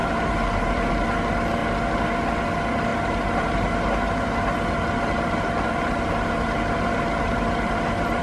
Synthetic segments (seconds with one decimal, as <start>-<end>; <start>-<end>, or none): 0.0-0.9; 2.9-8.2